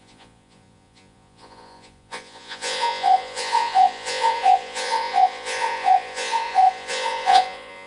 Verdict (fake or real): fake